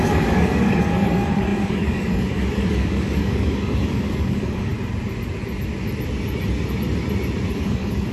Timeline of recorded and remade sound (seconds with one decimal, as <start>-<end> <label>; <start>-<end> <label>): 0.0-4.7 remade; 4.7-7.5 recorded; 7.5-8.1 remade